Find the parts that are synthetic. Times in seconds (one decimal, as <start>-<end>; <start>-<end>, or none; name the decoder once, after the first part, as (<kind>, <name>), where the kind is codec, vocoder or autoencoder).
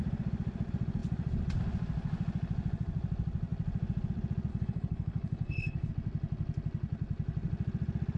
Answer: 4.5-5.9 (codec, HILCodec)